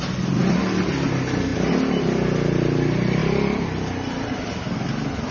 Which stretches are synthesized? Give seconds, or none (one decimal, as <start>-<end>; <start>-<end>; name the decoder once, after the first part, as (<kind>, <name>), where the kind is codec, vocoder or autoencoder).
3.2-5.3 (vocoder, BigVGAN v2)